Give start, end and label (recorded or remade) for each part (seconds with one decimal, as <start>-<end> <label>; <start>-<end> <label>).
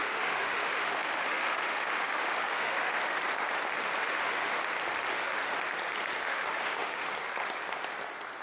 0.0-3.2 remade; 3.2-4.0 recorded; 4.0-4.6 remade; 4.6-5.1 recorded; 5.1-5.6 remade; 5.6-6.3 recorded; 6.3-7.1 remade; 7.1-8.4 recorded